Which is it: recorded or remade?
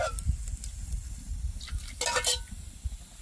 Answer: recorded